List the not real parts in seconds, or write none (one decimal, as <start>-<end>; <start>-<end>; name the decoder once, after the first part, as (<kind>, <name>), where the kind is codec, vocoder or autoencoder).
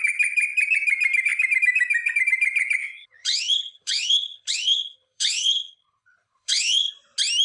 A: 2.8-6.9 (codec, HILCodec)